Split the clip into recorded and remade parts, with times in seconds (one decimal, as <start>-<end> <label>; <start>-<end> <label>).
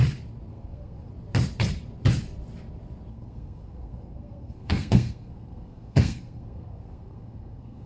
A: 0.0-0.5 recorded; 0.5-1.1 remade; 1.1-3.1 recorded; 3.1-7.9 remade